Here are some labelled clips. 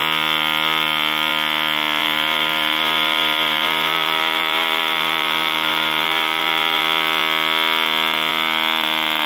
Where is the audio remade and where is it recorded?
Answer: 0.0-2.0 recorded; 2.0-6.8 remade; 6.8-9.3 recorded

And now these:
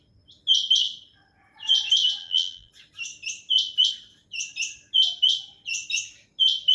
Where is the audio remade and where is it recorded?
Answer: 0.0-2.2 recorded; 2.2-2.7 remade; 2.7-6.7 recorded

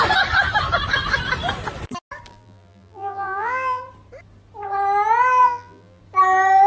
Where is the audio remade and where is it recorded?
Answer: 0.0-2.3 recorded; 2.3-3.8 remade; 3.8-5.4 recorded; 5.4-6.0 remade; 6.0-6.7 recorded

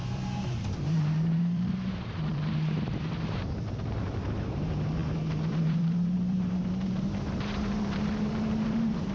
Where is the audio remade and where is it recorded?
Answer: 0.0-9.1 remade

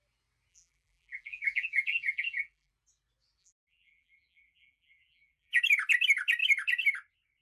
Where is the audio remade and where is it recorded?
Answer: 0.0-0.5 recorded; 0.5-2.7 remade; 2.7-3.4 recorded; 3.4-5.6 remade; 5.6-7.4 recorded

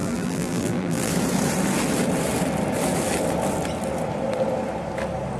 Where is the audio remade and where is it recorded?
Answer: 0.0-1.1 remade; 1.1-5.4 recorded